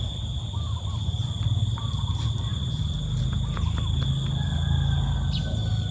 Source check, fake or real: real